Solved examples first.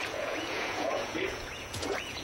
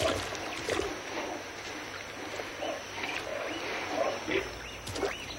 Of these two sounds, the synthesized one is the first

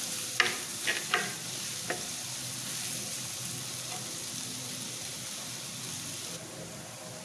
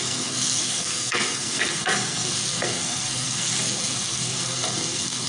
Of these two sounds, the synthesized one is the second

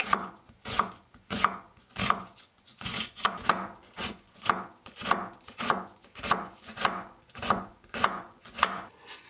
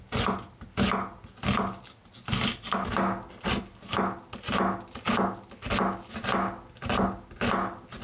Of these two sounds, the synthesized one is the first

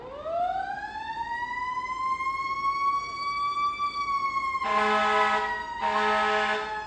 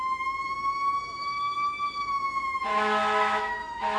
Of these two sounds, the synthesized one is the second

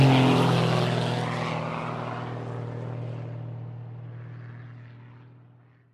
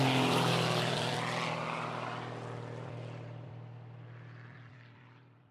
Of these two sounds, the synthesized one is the second